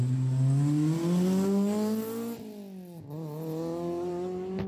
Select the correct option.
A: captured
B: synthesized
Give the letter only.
A